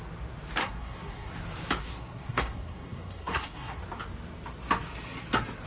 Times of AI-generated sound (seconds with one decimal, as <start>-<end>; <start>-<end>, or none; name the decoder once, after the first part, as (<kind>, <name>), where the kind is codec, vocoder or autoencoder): 0.6-1.3 (codec, SNAC); 1.8-3.8